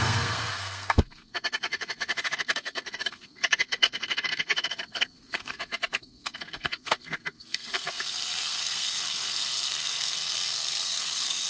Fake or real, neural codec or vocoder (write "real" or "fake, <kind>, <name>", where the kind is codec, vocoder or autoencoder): fake, codec, SNAC